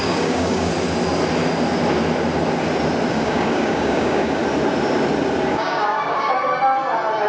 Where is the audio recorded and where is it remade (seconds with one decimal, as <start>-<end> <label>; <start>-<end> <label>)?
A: 0.0-0.7 remade; 0.7-3.1 recorded; 3.1-4.4 remade; 4.4-5.5 recorded; 5.5-6.3 remade; 6.3-7.3 recorded